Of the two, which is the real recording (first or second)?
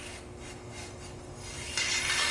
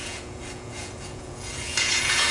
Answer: first